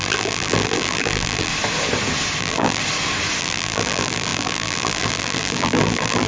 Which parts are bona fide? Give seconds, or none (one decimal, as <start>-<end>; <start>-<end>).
1.5-2.4; 2.8-3.4

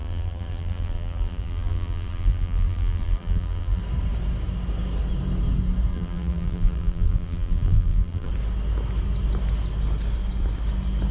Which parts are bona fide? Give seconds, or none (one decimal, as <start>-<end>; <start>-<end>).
3.8-5.9; 8.3-11.1

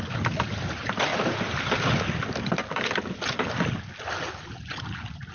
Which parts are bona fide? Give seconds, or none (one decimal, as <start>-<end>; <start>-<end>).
0.0-1.1; 1.6-5.3

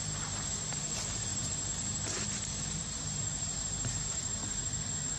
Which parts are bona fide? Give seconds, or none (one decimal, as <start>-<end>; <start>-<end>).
4.4-5.2

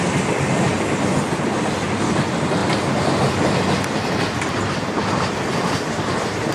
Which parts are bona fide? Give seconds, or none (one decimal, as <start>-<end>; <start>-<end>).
0.0-6.5

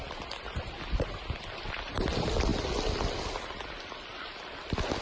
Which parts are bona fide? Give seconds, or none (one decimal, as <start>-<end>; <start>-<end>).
0.0-5.0